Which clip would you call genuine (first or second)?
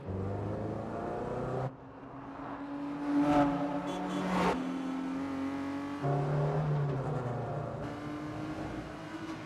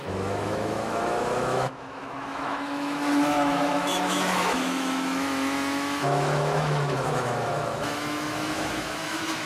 first